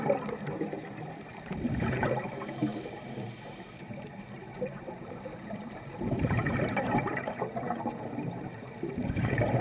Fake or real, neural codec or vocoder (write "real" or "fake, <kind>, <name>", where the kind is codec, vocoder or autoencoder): fake, vocoder, BigVGAN v2